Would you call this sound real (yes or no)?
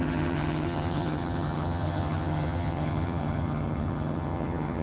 no